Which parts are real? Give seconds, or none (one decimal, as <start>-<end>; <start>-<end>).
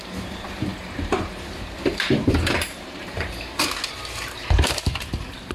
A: none